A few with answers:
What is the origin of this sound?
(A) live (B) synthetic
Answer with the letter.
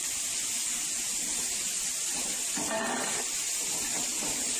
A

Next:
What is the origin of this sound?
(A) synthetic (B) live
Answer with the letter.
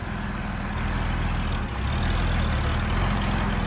B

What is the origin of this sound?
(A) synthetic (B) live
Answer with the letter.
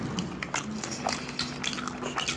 B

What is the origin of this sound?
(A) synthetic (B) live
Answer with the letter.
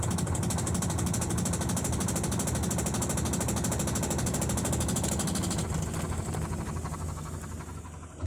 B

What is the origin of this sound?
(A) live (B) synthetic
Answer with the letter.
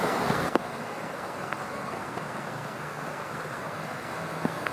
B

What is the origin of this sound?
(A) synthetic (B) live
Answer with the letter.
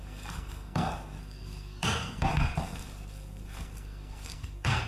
A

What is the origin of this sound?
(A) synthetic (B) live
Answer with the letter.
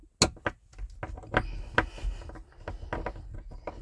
B